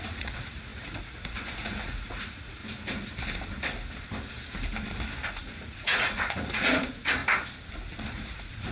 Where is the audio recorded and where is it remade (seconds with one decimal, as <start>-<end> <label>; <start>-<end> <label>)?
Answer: 0.0-2.6 remade; 2.6-5.3 recorded; 5.3-7.2 remade; 7.2-8.1 recorded; 8.1-8.7 remade